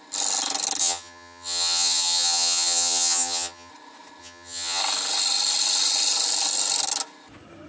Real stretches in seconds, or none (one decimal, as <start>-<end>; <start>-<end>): 0.0-0.8; 3.7-4.2; 4.8-7.7